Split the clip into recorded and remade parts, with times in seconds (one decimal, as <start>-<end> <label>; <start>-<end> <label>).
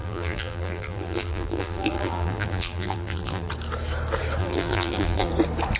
0.0-3.5 remade; 3.5-4.4 recorded; 4.4-5.3 remade; 5.3-5.8 recorded